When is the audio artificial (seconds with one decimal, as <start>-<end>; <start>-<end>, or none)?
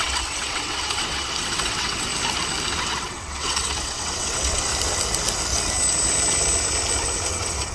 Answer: 0.0-2.1; 2.8-4.7; 7.3-7.7